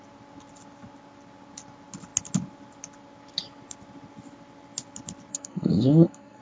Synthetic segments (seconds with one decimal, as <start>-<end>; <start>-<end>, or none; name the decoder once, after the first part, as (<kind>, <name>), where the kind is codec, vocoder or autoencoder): 5.3-6.4 (codec, SNAC)